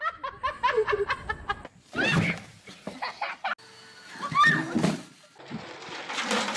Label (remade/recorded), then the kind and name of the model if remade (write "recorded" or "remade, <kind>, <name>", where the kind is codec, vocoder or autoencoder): recorded